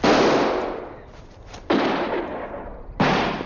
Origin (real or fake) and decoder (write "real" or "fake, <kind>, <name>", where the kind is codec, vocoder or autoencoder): real